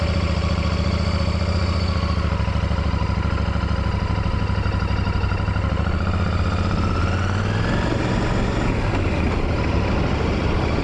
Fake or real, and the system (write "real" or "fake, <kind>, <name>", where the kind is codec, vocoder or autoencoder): real